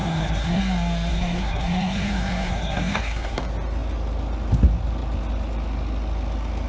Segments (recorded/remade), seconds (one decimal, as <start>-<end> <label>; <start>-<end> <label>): 0.0-0.6 remade; 0.6-1.1 recorded; 1.1-3.4 remade; 3.4-6.7 recorded